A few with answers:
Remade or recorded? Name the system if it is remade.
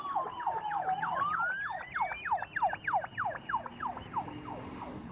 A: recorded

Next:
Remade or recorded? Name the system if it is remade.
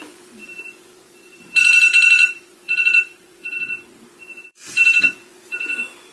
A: remade, vocoder, Vocos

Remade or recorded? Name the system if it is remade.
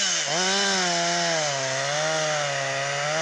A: recorded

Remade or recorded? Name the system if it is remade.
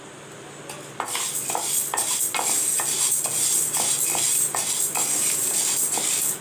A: recorded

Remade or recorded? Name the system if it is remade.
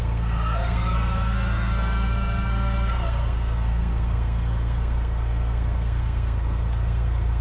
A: remade, codec, SNAC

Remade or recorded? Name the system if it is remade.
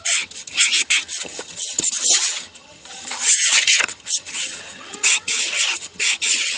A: remade, vocoder, HiFi-GAN